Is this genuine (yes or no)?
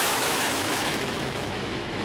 no